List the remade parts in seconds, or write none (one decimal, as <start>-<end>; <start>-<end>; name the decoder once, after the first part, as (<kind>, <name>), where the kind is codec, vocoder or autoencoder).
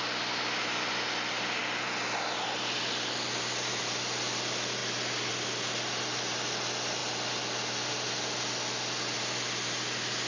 none